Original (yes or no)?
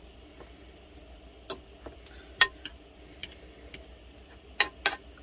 yes